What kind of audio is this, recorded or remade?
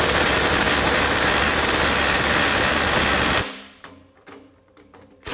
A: remade